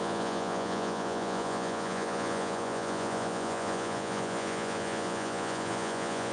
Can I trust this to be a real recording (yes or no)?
no